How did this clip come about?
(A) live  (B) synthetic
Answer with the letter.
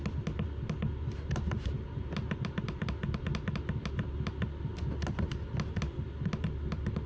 A